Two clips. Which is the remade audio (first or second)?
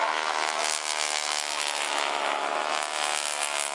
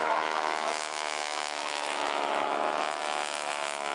second